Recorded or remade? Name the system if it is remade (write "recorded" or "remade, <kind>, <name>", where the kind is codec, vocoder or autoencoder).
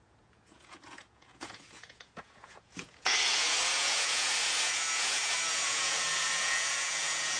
remade, vocoder, Vocos